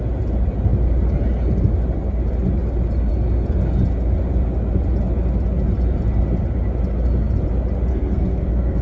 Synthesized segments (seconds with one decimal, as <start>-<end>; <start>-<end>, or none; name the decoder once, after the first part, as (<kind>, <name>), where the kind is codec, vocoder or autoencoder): 7.9-8.8 (codec, SNAC)